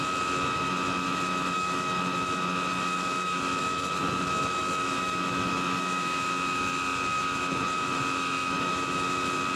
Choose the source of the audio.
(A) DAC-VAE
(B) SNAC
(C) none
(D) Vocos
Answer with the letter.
A